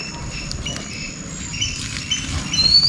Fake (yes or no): no